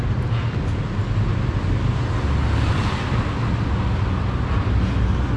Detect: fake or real real